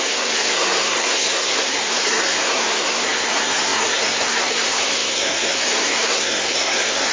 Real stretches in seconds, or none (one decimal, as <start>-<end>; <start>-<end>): none